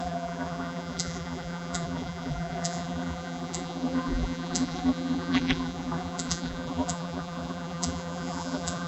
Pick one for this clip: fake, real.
fake